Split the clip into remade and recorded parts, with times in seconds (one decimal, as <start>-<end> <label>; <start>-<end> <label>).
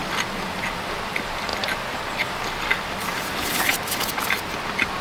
0.0-0.6 recorded; 0.6-5.0 remade